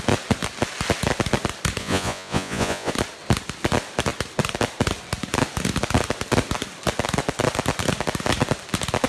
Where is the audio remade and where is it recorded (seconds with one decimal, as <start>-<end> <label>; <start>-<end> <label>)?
0.0-1.8 recorded; 1.8-2.9 remade; 2.9-9.1 recorded